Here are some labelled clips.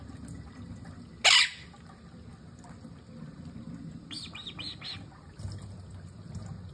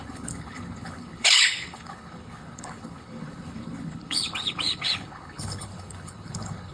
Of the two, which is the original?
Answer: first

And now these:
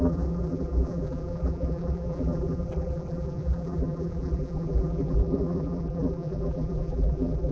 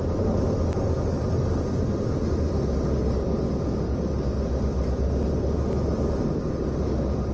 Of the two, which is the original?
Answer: second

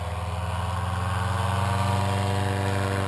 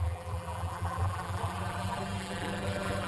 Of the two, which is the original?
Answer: first